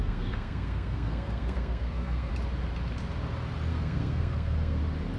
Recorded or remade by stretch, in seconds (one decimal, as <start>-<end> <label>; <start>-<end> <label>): 0.0-2.3 remade; 2.3-3.7 recorded; 3.7-4.8 remade; 4.8-5.2 recorded